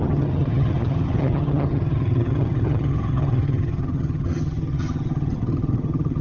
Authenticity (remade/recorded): remade